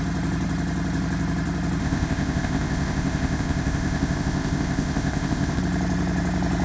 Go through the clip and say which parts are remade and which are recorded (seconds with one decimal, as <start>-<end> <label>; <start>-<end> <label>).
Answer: 0.0-1.8 recorded; 1.8-5.6 remade; 5.6-6.6 recorded